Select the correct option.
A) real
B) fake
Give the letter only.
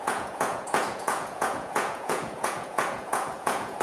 B